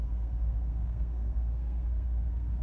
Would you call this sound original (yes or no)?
no